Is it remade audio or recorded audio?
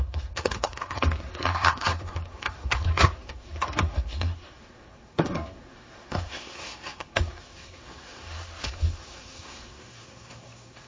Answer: remade